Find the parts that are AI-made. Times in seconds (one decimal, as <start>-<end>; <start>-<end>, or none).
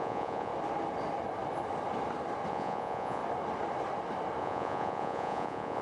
0.0-0.5; 2.5-3.2; 4.4-5.8